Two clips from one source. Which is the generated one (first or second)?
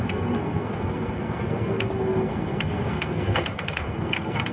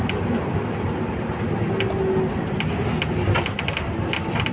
first